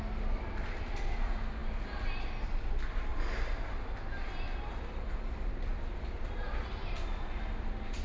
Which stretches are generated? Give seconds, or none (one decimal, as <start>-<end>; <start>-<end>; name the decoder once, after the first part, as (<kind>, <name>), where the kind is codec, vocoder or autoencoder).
none